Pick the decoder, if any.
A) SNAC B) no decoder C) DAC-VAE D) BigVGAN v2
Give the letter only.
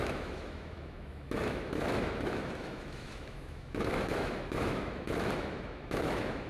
C